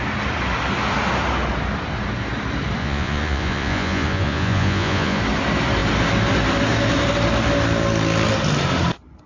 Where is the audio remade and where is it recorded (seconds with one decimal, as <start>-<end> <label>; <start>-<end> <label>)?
0.0-2.8 recorded; 2.8-5.2 remade; 5.2-9.3 recorded